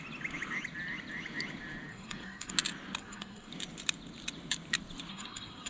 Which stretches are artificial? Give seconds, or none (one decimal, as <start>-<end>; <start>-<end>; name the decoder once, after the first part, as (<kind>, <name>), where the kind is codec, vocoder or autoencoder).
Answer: 1.9-2.5 (codec, SNAC); 3.0-3.5; 5.1-5.7